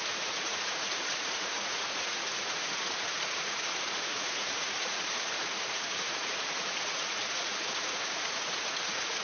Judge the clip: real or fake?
fake